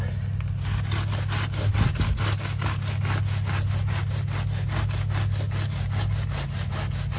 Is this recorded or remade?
recorded